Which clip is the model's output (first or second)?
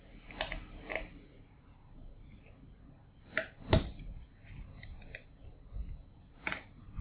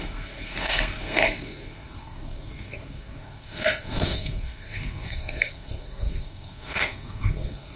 second